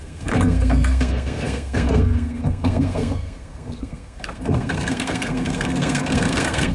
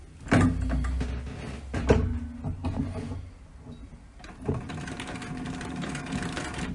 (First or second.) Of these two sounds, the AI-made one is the first